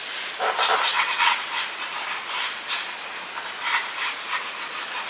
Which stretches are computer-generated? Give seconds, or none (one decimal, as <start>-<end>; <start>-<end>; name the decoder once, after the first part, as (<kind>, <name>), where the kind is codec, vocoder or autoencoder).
0.9-1.5 (vocoder, WaveNeXt)